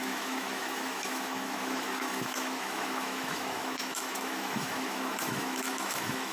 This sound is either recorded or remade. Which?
remade